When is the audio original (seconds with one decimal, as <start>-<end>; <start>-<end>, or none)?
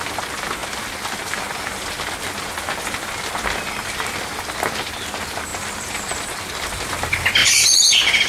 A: 0.0-7.4